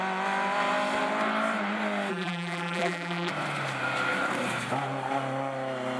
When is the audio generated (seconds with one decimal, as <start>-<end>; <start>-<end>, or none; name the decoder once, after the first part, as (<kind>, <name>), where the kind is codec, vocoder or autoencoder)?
2.1-3.3 (vocoder, BigVGAN v2)